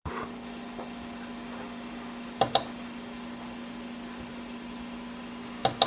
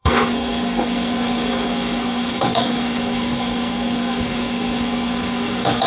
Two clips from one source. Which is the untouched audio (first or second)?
first